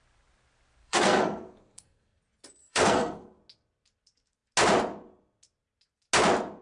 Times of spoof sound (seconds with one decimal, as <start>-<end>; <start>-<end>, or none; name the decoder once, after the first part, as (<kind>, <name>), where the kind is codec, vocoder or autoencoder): 0.8-2.2 (codec, SNAC); 2.6-3.4